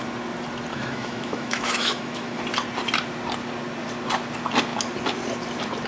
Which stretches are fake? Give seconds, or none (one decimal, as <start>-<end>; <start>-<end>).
0.7-2.4